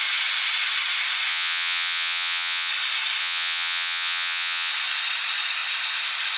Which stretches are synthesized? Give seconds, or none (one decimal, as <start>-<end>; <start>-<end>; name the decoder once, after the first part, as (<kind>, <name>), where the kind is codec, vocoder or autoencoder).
1.3-2.7 (vocoder, Vocos); 3.2-4.7